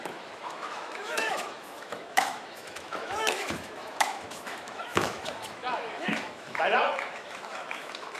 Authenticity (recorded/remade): remade